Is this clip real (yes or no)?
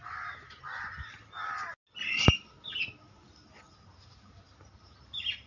yes